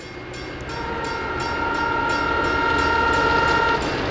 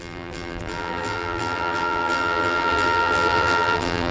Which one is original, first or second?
first